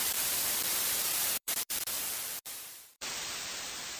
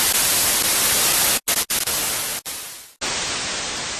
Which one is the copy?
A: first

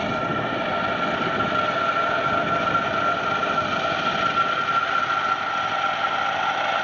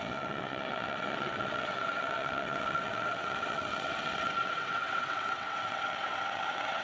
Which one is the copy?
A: second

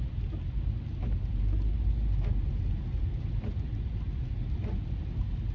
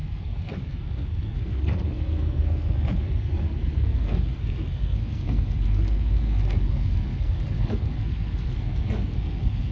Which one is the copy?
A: second